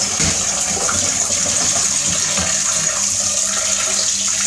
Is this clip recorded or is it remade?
recorded